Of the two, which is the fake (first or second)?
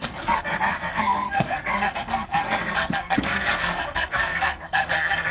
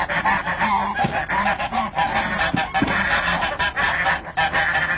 first